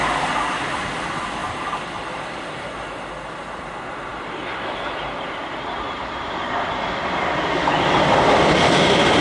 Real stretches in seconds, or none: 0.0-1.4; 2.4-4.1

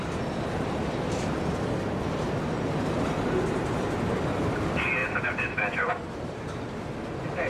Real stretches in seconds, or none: 0.0-5.0; 6.0-7.5

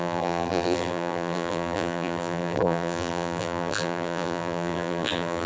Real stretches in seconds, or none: none